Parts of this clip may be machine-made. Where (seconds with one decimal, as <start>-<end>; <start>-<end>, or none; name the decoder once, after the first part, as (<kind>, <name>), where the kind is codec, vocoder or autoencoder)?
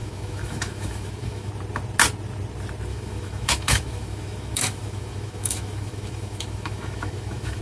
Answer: 0.0-1.5 (autoencoder, DAC-VAE); 2.9-7.6